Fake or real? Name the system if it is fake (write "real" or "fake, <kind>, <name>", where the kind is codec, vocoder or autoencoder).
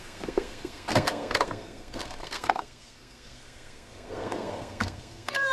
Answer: fake, codec, SNAC